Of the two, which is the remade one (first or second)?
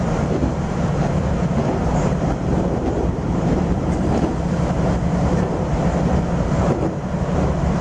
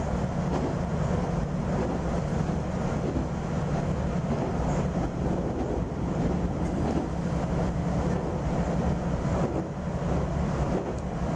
first